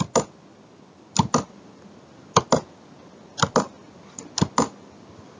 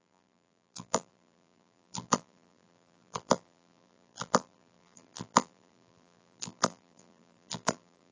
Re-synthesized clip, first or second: second